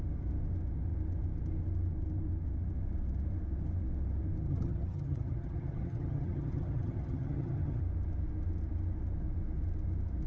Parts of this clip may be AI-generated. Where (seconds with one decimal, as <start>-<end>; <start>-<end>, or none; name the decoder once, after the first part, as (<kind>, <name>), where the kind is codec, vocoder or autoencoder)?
4.5-7.8 (vocoder, HiFi-GAN)